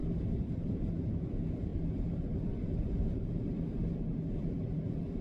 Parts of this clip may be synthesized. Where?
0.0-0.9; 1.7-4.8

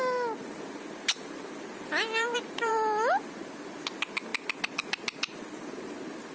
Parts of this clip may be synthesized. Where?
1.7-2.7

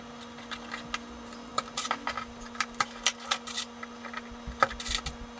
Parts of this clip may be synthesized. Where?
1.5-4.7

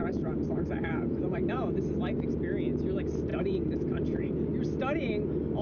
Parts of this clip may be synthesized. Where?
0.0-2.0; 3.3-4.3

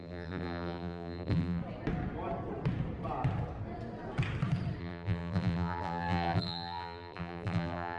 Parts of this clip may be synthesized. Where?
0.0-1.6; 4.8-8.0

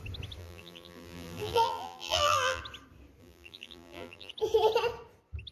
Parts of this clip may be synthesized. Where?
0.4-2.6; 3.2-4.3

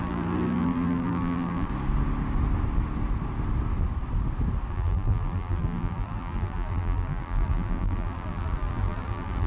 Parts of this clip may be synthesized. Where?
0.0-1.7; 4.7-9.5

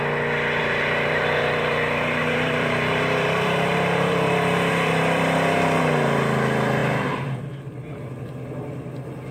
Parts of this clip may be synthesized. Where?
0.6-5.8